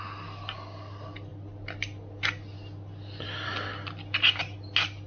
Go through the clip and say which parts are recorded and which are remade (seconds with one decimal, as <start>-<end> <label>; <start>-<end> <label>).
0.0-5.1 recorded